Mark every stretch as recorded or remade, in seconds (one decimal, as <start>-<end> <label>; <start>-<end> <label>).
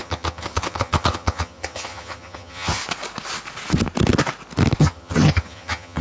0.0-2.8 remade; 2.8-4.8 recorded; 4.8-6.0 remade